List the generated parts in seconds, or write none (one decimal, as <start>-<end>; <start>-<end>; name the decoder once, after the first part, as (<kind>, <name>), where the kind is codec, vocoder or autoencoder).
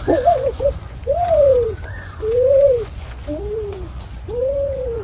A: 0.0-5.0 (vocoder, Vocos)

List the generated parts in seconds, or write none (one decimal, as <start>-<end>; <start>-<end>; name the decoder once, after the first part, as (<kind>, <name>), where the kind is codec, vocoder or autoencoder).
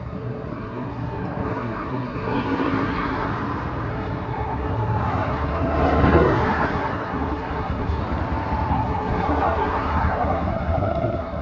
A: 0.0-3.3 (codec, SNAC); 3.9-8.0; 8.7-11.4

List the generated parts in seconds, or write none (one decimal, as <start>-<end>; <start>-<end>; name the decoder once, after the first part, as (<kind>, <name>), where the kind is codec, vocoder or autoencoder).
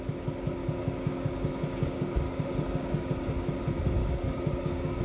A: 0.6-3.1 (codec, DAC); 4.0-5.0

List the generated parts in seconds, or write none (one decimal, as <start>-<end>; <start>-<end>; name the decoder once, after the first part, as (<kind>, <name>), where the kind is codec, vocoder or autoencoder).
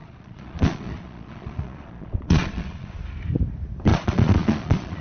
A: 0.0-3.0 (vocoder, Vocos); 3.9-5.0